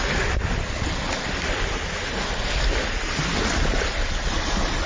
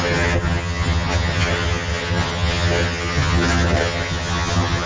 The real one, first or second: first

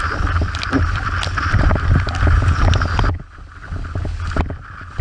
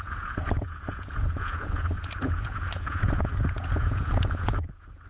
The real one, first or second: first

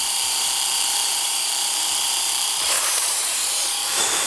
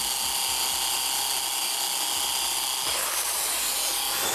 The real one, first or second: second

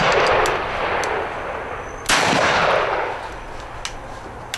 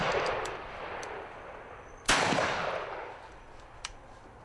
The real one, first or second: first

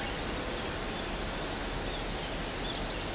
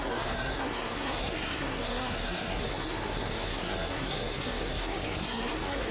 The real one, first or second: first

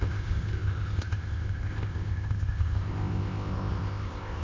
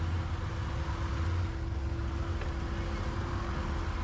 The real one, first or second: second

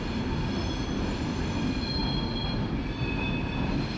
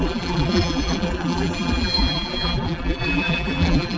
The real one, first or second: first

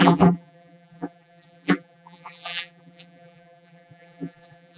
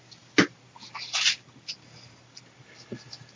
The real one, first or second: second